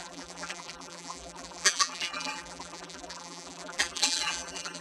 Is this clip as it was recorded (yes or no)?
no